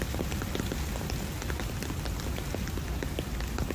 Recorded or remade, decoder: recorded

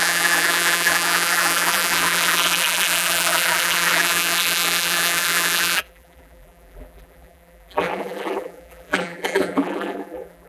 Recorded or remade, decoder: remade, vocoder, BigVGAN v2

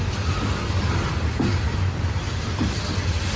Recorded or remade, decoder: recorded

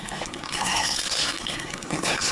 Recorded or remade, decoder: remade, codec, SNAC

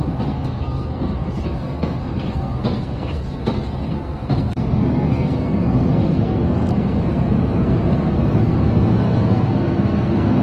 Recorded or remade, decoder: remade, codec, SNAC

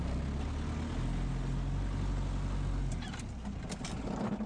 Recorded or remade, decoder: recorded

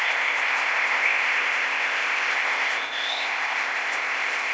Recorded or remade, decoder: remade, codec, ZipCodec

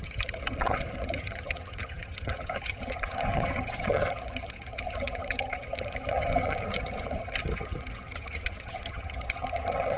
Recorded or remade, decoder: remade, vocoder, HiFi-GAN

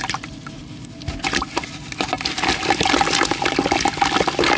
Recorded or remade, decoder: recorded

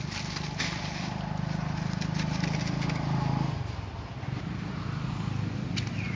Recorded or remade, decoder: recorded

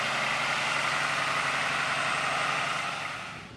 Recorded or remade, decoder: recorded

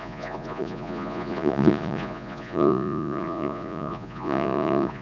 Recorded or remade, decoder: remade, vocoder, Vocos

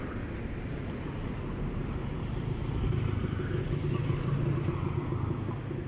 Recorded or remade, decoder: recorded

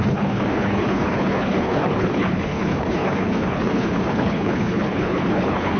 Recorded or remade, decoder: remade, codec, HILCodec